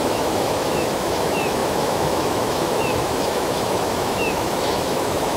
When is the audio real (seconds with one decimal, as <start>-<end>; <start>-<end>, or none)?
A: none